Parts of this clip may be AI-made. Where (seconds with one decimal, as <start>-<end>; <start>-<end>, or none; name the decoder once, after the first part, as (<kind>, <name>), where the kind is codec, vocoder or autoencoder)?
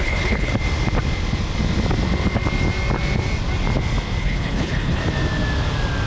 0.0-0.5 (codec, HILCodec); 4.2-5.0